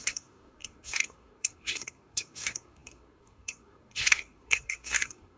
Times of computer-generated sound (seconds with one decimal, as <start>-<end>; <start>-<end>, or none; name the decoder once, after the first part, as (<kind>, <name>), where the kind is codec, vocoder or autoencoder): 0.0-5.4 (codec, SNAC)